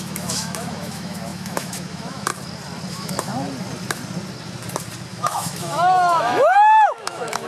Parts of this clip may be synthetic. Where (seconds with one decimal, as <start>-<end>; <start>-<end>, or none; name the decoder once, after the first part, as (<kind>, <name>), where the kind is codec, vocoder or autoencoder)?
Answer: 0.0-2.3 (autoencoder, DAC-VAE); 2.9-3.3; 5.1-7.5